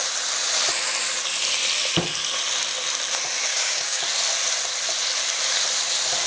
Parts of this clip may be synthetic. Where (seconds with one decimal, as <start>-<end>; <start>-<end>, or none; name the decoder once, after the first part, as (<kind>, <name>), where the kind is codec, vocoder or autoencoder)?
3.5-4.0 (codec, DAC)